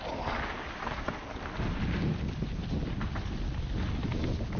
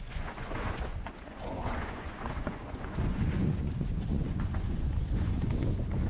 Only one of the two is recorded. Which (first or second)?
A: first